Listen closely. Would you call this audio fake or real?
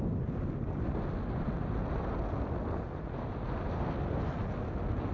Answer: real